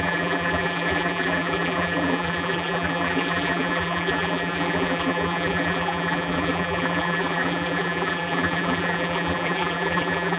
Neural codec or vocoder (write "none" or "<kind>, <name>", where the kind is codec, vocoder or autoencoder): vocoder, BigVGAN v2